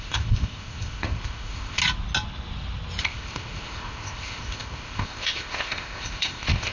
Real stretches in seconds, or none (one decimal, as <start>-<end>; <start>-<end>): 1.8-3.0